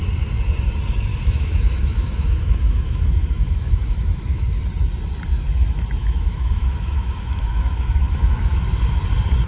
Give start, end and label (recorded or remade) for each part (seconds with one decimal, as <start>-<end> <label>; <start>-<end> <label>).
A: 0.0-1.1 recorded; 1.1-4.6 remade; 4.6-6.0 recorded; 6.0-8.6 remade; 8.6-9.5 recorded